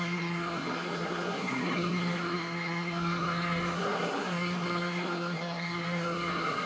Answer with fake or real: fake